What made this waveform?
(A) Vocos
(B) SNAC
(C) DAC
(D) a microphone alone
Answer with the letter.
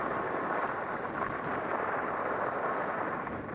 D